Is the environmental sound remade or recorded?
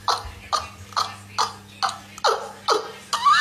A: recorded